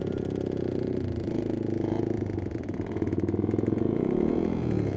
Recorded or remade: remade